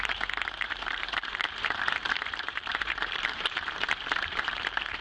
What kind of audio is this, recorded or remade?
remade